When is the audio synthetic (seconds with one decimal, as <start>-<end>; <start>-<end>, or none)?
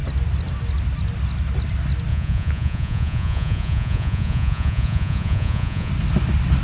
2.1-5.9